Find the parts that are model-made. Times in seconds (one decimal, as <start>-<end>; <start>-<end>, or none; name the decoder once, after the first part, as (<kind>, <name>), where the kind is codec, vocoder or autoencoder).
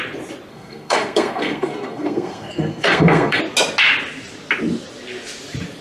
0.5-3.4 (codec, SNAC)